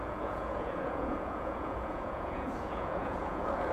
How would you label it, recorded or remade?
remade